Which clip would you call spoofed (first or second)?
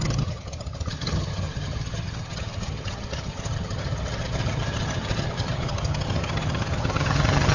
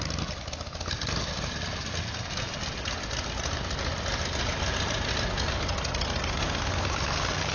first